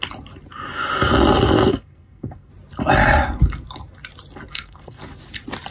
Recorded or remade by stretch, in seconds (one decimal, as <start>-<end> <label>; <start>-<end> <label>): 0.0-1.7 recorded; 1.7-2.5 remade; 2.5-4.5 recorded; 4.5-5.0 remade; 5.0-5.7 recorded